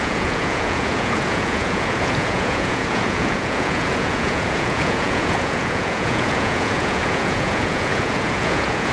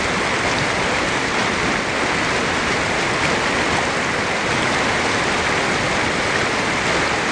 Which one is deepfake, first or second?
first